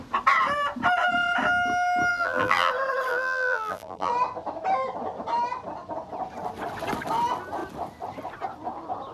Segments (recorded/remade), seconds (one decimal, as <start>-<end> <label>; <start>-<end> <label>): 0.0-2.1 recorded; 2.1-2.7 remade; 2.7-3.1 recorded; 3.1-4.1 remade; 4.1-9.1 recorded